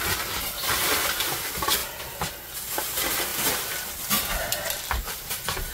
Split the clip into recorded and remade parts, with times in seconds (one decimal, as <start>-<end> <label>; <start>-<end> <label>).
0.0-1.8 recorded; 1.8-2.5 remade; 2.5-3.3 recorded; 3.3-5.3 remade; 5.3-5.7 recorded